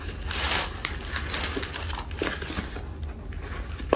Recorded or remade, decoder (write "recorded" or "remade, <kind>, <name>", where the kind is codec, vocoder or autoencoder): recorded